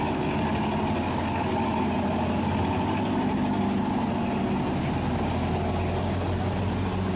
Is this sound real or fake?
real